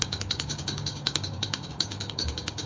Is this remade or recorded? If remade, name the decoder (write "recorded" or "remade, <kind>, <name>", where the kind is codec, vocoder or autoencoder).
remade, codec, DAC